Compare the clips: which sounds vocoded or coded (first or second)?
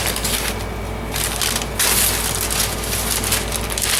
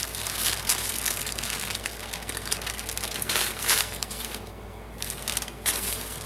second